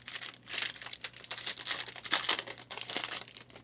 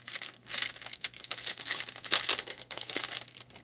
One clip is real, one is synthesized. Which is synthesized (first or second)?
second